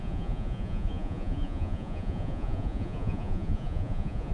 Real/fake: fake